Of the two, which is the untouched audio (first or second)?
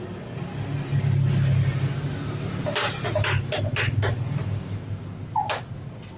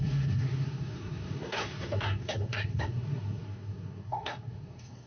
first